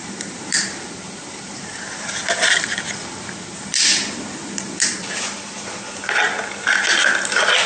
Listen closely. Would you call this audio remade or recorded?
recorded